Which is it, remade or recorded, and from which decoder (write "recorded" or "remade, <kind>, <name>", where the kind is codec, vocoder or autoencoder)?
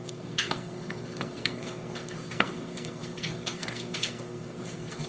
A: remade, codec, SNAC